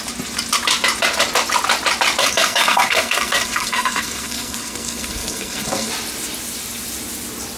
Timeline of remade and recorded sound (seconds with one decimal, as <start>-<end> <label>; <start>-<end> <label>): 0.0-2.2 recorded; 2.2-5.9 remade; 5.9-7.6 recorded